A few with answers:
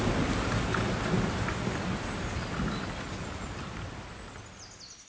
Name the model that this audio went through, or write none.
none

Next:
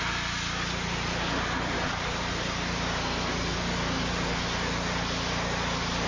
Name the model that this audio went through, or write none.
none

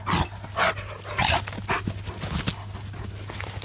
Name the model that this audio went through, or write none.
none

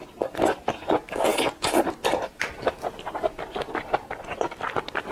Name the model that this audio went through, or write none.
none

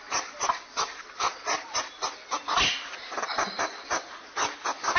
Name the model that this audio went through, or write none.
none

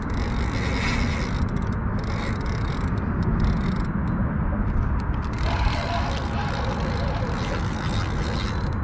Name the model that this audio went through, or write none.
none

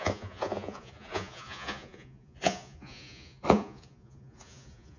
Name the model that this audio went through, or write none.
vocoder, Vocos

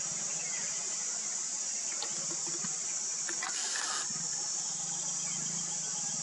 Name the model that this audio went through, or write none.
none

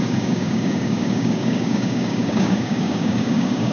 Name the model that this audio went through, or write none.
codec, DAC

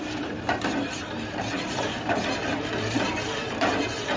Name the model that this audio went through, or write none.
vocoder, BigVGAN v2